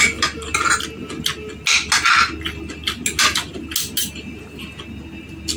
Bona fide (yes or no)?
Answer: yes